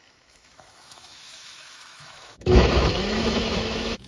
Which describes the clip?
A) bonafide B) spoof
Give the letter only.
B